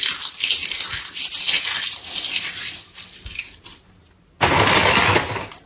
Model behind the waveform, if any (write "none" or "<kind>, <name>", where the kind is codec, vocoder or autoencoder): none